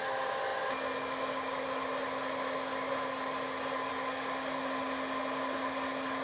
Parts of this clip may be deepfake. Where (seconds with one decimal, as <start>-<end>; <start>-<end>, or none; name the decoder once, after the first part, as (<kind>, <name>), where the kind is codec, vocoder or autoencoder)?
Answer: none